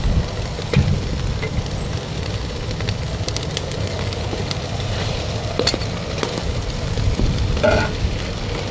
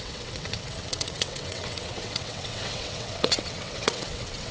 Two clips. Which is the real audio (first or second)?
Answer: first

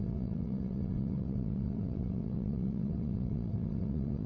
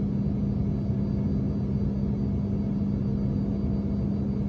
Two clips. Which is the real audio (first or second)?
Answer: second